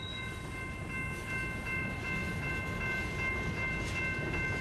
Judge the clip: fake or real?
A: real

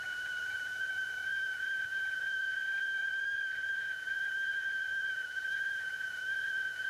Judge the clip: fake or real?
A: fake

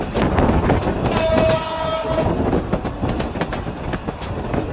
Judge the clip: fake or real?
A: real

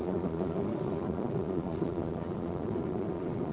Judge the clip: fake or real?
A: fake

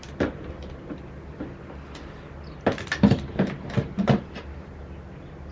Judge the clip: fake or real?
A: real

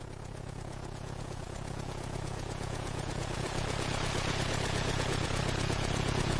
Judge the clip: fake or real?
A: fake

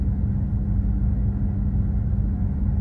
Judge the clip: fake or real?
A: real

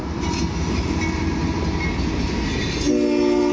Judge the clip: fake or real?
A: real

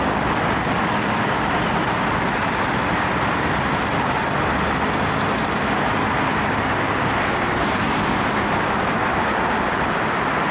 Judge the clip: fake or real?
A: real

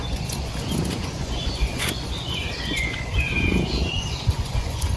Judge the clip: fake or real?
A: fake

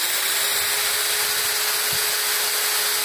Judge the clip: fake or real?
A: real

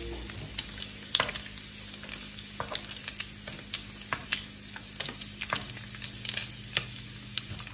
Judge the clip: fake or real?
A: real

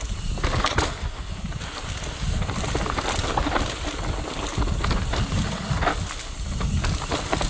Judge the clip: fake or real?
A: real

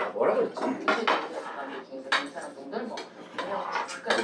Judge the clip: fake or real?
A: real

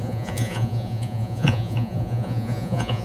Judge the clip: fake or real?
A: fake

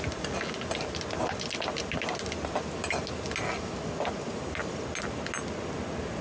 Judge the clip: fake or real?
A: real